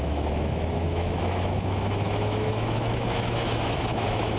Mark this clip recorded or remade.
remade